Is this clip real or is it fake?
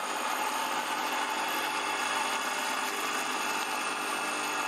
real